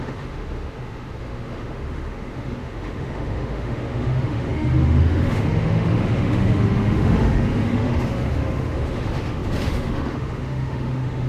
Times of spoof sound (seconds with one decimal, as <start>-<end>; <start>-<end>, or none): 0.0-11.3